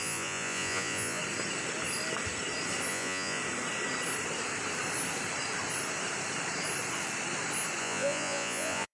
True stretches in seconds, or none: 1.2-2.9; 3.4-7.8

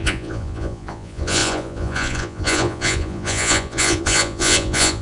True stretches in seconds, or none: none

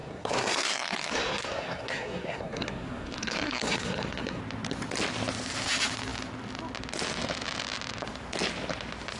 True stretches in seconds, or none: 4.4-9.2

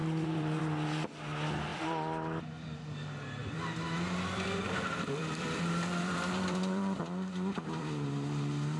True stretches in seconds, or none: 0.6-1.7; 2.4-3.4; 7.0-8.8

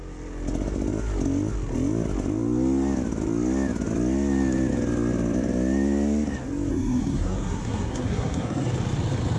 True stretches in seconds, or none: 0.0-6.7; 8.7-9.4